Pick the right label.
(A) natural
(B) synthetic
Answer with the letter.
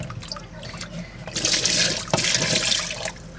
A